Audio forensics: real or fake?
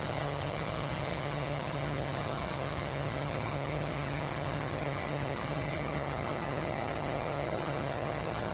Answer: fake